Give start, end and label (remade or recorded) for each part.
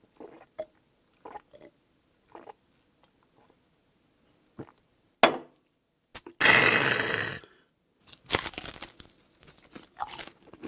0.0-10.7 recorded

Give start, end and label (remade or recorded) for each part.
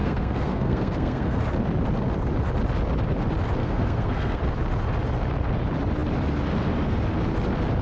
0.0-1.4 remade; 1.4-3.6 recorded; 3.6-4.4 remade; 4.4-7.8 recorded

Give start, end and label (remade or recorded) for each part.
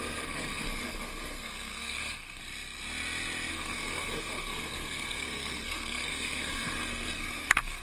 0.0-2.4 remade; 2.4-3.5 recorded; 3.5-7.8 remade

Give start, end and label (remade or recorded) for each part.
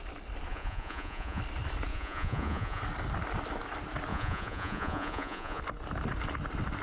0.0-0.5 recorded; 0.5-1.4 remade; 1.4-1.9 recorded; 1.9-2.8 remade; 2.8-4.1 recorded; 4.1-5.6 remade; 5.6-6.8 recorded